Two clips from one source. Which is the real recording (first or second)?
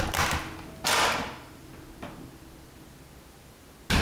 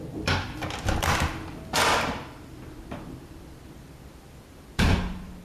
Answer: first